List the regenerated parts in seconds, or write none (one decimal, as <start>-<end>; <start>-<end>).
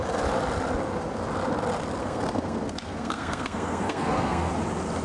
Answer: 2.0-4.5